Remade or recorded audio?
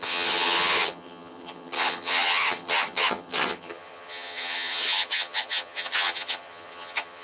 remade